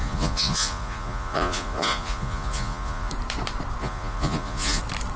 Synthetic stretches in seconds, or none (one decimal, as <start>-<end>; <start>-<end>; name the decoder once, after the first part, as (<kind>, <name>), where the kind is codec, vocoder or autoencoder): 0.0-3.1 (vocoder, Vocos); 3.8-4.8